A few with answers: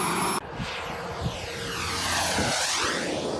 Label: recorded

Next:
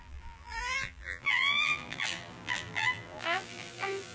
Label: remade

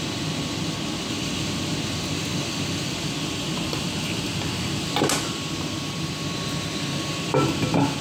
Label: recorded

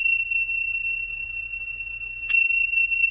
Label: remade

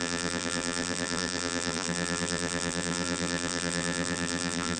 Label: remade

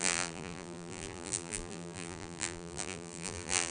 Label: remade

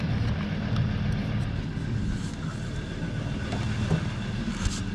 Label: recorded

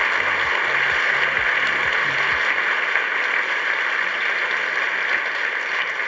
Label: recorded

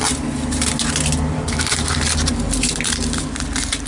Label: remade